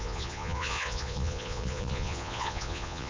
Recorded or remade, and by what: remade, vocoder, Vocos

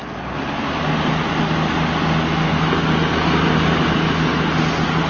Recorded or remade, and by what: recorded